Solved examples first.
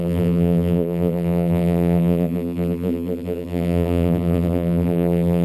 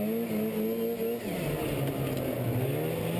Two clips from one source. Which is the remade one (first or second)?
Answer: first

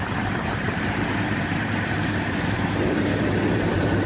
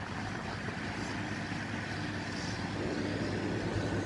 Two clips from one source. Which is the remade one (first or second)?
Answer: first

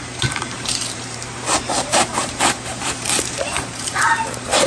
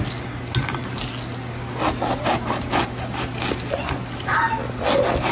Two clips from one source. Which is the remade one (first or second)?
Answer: first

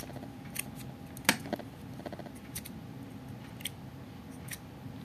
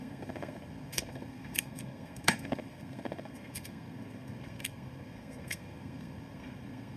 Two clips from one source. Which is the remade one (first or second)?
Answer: second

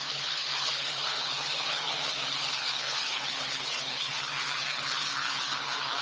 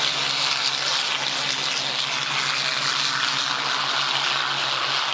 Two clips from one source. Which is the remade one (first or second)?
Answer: first